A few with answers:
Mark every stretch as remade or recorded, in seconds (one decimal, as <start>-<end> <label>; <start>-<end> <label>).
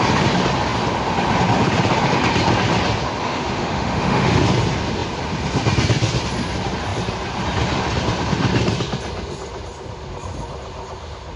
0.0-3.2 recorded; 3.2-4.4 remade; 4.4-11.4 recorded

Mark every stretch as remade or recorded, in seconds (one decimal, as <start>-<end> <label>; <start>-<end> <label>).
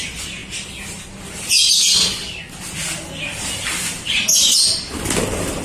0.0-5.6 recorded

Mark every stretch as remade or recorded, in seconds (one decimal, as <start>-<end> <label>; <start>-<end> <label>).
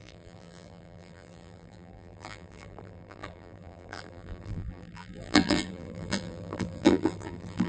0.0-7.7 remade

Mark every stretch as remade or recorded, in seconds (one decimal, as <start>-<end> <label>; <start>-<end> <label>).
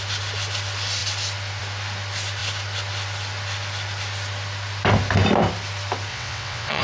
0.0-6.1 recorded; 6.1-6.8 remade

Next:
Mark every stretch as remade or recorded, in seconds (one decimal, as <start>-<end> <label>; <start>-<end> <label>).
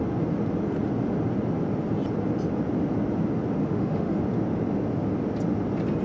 0.0-3.6 recorded; 3.6-4.2 remade; 4.2-6.0 recorded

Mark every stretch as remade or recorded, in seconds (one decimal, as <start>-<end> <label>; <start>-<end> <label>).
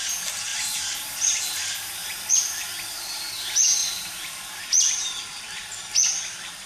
0.0-6.7 recorded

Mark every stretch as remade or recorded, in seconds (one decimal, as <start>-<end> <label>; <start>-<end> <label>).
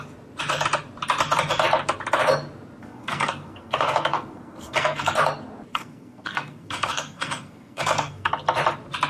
0.0-2.8 recorded; 2.8-5.1 remade; 5.1-5.7 recorded; 5.7-8.3 remade; 8.3-9.1 recorded